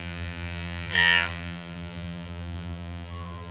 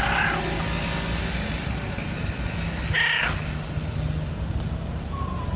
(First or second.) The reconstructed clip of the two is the first